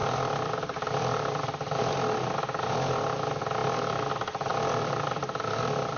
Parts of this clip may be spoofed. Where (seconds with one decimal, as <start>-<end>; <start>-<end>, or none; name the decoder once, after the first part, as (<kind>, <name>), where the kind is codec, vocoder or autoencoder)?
0.0-1.8 (vocoder, BigVGAN v2); 3.6-4.1; 4.5-5.6